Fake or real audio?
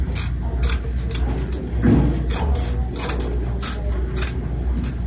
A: real